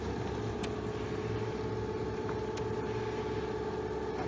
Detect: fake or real real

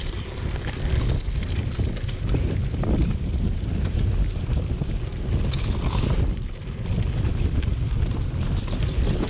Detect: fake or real real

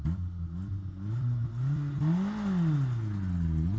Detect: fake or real real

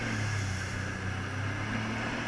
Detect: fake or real real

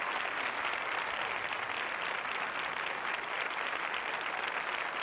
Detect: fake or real real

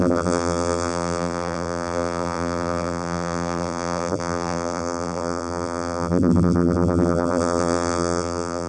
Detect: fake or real fake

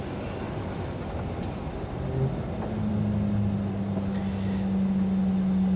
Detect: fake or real real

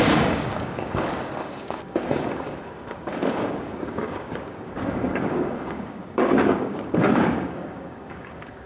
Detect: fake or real fake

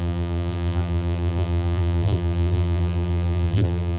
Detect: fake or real fake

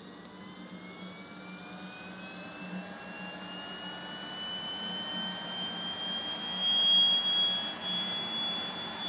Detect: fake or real real